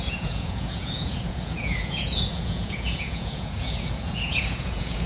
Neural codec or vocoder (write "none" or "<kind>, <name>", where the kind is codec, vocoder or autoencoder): vocoder, Vocos